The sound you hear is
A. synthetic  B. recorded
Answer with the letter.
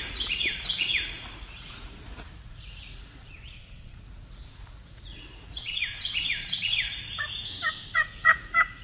A